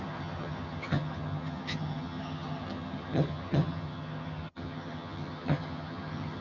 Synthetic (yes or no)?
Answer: yes